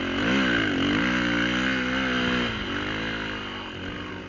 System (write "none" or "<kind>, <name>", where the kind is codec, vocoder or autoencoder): none